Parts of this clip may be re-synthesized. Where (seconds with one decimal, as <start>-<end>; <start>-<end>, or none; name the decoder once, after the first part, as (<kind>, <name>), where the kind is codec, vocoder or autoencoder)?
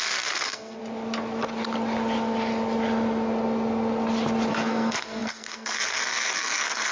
0.0-0.8 (codec, SNAC); 4.5-6.9